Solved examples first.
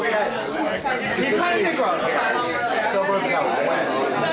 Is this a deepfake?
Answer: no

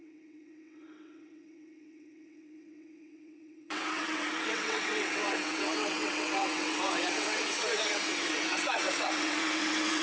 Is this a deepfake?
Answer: yes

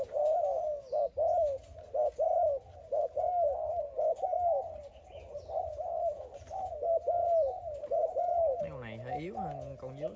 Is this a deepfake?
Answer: no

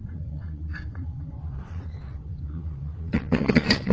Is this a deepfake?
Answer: yes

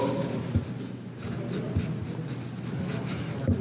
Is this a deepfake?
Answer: no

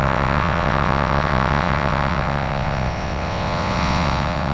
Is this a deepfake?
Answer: yes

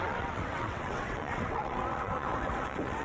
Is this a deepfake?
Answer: yes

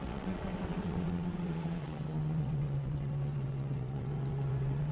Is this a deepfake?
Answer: yes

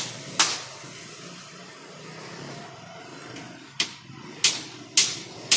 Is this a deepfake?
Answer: no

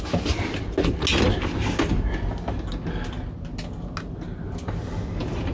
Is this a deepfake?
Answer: no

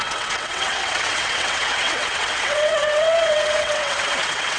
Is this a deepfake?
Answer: yes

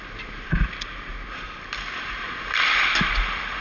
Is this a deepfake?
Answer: no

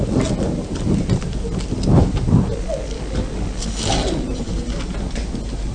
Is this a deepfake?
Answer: no